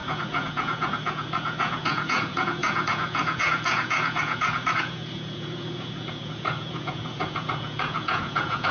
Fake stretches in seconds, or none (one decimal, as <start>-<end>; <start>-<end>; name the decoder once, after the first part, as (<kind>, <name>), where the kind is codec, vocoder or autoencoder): 0.0-8.7 (vocoder, Vocos)